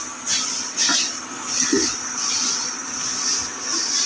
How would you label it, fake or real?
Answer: real